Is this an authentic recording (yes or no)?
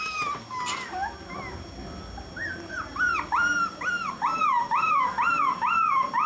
yes